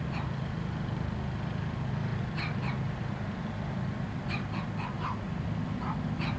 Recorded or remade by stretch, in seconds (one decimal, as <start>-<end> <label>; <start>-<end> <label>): 0.0-6.4 recorded

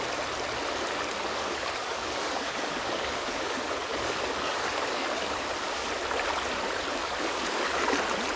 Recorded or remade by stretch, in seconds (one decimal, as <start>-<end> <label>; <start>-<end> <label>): 0.0-1.3 recorded; 1.3-5.9 remade; 5.9-6.9 recorded; 6.9-7.8 remade; 7.8-8.4 recorded

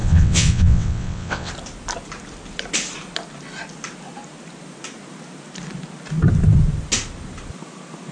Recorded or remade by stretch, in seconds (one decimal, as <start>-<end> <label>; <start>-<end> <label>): 0.0-1.5 remade; 1.5-8.1 recorded

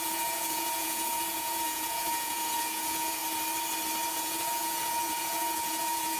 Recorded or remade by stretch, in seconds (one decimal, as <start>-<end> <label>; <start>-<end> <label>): 0.0-3.2 remade; 3.2-4.1 recorded; 4.1-6.2 remade

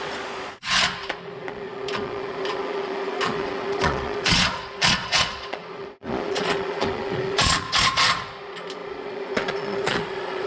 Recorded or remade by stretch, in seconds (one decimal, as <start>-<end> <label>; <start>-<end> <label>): 0.0-10.5 remade

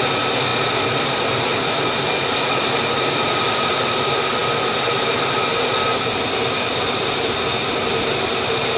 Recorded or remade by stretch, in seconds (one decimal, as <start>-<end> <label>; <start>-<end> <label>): 0.0-8.8 recorded

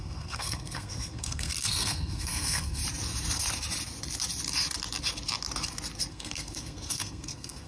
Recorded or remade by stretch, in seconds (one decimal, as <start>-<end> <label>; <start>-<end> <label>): 0.0-2.8 remade; 2.8-6.1 recorded; 6.1-7.7 remade